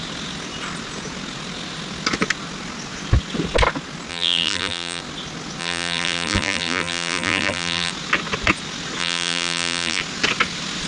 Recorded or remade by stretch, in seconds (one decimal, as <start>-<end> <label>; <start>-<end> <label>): 0.0-4.1 recorded; 4.1-5.0 remade; 5.0-5.6 recorded; 5.6-7.9 remade; 7.9-9.0 recorded; 9.0-10.0 remade; 10.0-10.9 recorded